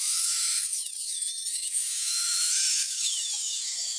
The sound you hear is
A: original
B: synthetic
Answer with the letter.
B